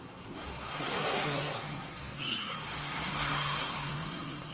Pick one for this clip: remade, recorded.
remade